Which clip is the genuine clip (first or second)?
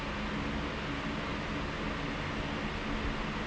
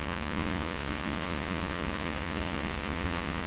first